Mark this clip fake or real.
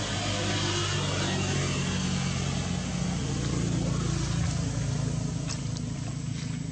real